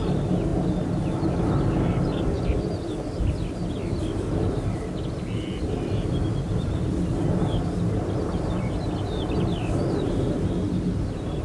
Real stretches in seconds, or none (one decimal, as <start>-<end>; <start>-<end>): 0.0-11.4